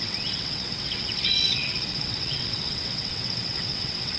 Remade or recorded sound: remade